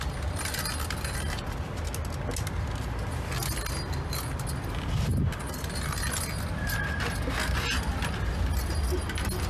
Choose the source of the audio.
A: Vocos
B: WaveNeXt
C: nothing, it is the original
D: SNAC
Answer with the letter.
C